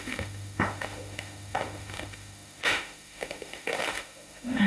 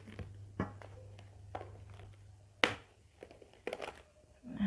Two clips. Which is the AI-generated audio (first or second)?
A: first